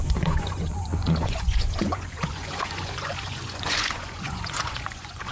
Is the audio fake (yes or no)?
yes